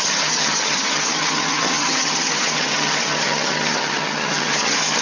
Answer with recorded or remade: remade